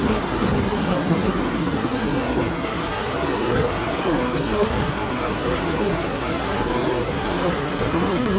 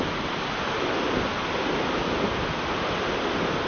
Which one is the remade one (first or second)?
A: first